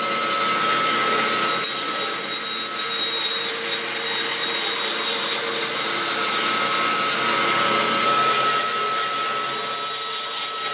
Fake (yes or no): no